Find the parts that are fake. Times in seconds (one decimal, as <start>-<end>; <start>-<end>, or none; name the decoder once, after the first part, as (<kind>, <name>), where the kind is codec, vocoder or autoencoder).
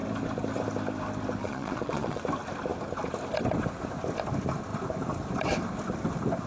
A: 1.4-2.2 (vocoder, Vocos)